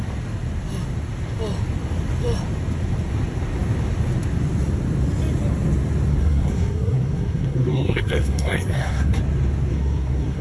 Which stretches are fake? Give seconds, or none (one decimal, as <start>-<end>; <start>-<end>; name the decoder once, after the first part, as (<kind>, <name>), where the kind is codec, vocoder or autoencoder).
6.2-9.2 (codec, SNAC); 9.7-10.4